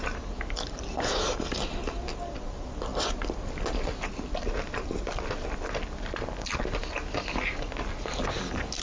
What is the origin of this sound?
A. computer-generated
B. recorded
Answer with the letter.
B